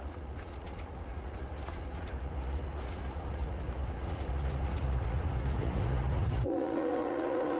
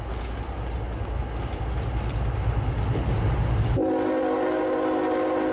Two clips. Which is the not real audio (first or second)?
first